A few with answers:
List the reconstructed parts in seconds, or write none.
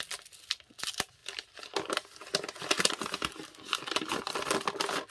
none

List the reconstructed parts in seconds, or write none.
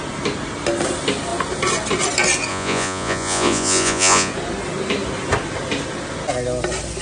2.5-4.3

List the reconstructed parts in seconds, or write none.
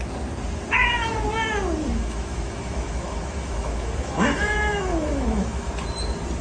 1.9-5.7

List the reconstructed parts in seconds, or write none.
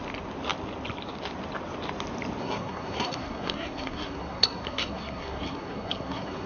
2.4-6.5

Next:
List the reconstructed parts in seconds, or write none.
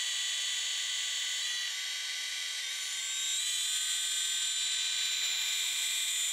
0.0-1.2; 2.3-3.0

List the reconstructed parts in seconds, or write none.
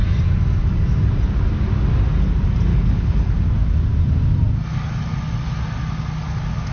2.7-3.5